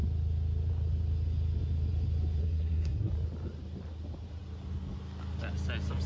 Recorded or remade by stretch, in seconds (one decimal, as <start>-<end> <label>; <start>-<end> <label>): 0.0-2.4 recorded; 2.4-3.1 remade; 3.1-6.1 recorded